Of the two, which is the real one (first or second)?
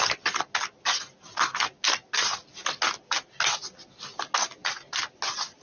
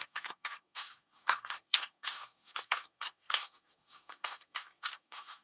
first